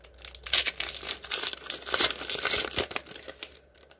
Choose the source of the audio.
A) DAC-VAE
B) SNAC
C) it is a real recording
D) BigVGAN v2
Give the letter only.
C